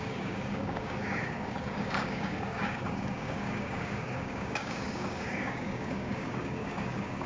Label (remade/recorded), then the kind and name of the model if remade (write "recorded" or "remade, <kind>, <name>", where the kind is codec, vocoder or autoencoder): remade, codec, DAC